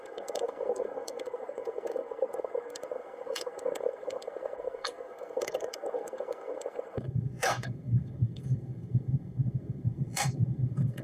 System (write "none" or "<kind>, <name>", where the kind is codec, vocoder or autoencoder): codec, SNAC